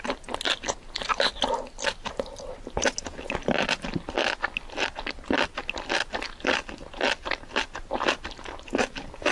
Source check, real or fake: real